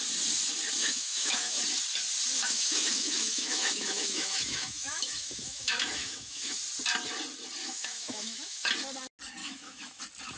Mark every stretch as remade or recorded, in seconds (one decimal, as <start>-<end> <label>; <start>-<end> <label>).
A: 0.0-0.8 recorded; 0.8-1.6 remade; 1.6-2.4 recorded; 2.4-6.6 remade; 6.6-7.6 recorded; 7.6-8.7 remade; 8.7-9.4 recorded; 9.4-10.0 remade; 10.0-10.4 recorded